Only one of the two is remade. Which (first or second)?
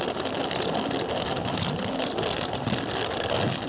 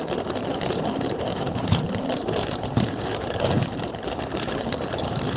second